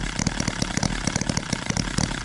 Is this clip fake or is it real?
real